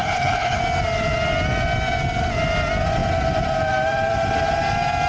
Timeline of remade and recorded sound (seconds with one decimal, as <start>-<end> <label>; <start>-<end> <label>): 0.0-0.6 remade; 0.6-5.1 recorded